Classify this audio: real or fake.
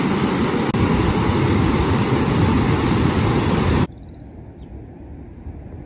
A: real